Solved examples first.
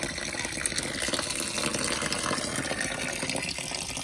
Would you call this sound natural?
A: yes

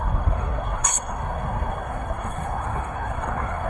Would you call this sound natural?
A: no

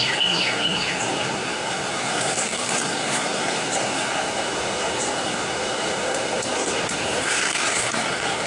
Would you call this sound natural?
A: no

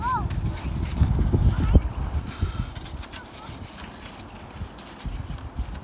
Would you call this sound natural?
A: yes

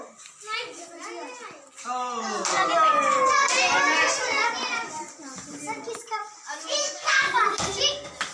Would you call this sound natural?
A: yes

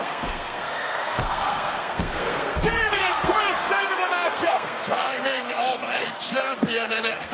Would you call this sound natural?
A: no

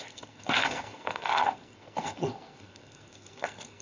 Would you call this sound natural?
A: no